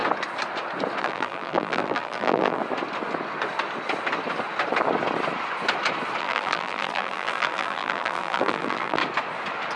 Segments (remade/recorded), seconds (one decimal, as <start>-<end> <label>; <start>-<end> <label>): 0.0-1.0 recorded; 1.0-2.6 remade; 2.6-6.2 recorded; 6.2-9.0 remade; 9.0-9.8 recorded